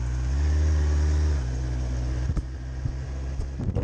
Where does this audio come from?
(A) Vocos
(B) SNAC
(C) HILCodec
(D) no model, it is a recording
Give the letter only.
D